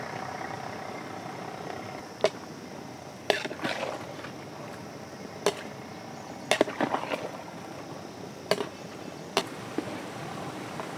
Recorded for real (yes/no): yes